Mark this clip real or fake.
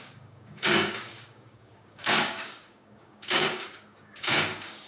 fake